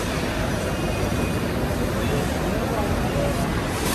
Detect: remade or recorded recorded